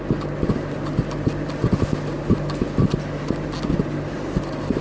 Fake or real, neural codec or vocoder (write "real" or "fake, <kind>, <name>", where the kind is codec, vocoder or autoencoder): real